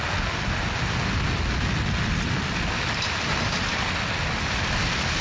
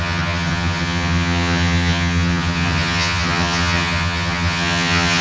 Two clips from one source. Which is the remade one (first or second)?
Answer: second